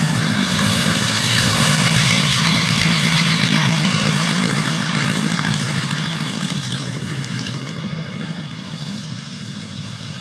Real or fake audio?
fake